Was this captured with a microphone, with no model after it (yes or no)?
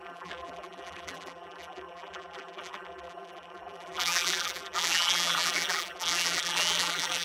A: no